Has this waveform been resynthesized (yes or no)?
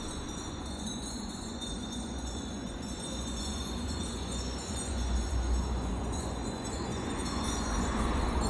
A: yes